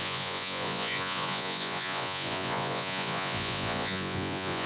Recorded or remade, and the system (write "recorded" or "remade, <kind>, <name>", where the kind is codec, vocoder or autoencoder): remade, vocoder, Vocos